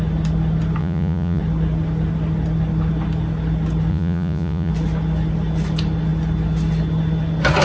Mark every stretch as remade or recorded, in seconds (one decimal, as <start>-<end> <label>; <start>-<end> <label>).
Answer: 0.0-0.8 recorded; 0.8-1.4 remade; 1.4-3.9 recorded; 3.9-4.7 remade; 4.7-7.6 recorded